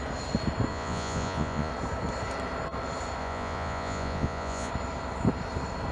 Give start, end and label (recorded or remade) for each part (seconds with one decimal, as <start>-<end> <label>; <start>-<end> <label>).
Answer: 0.0-0.7 recorded; 0.7-1.7 remade; 1.7-3.2 recorded; 3.2-4.7 remade; 4.7-5.9 recorded